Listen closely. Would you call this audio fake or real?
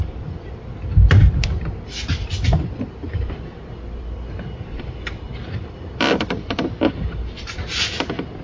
real